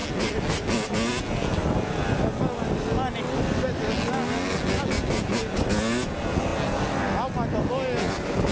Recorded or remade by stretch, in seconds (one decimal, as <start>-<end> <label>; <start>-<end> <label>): 0.0-8.5 recorded